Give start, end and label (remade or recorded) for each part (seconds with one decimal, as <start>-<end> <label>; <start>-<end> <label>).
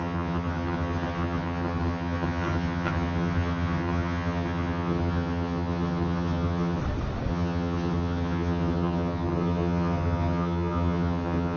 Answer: 0.0-6.8 remade; 6.8-7.3 recorded; 7.3-11.6 remade